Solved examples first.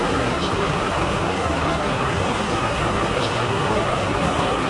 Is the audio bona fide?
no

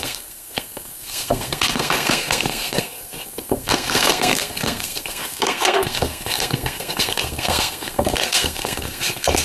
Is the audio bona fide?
no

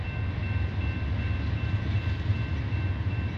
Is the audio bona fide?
yes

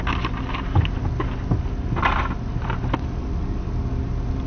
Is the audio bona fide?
yes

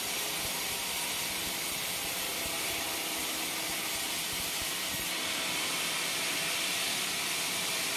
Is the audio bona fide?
yes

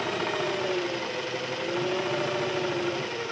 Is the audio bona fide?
yes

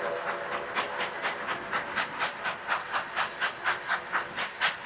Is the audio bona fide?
yes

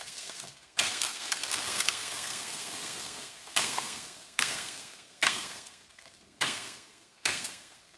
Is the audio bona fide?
no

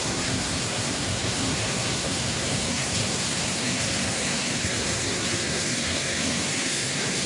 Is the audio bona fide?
no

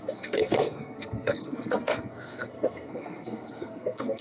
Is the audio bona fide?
no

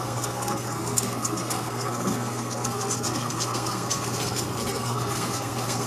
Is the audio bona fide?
no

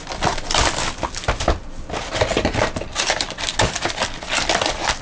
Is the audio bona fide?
yes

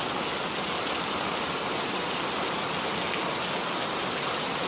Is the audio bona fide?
yes